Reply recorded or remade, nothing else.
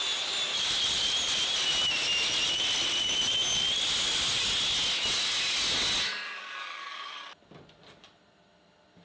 recorded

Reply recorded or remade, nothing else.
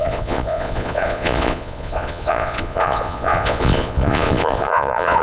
remade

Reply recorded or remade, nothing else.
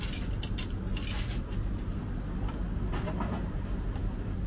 recorded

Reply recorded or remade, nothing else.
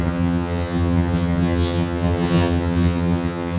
remade